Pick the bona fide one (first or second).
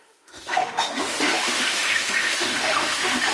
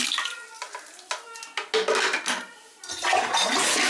second